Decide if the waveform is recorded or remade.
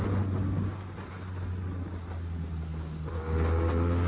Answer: recorded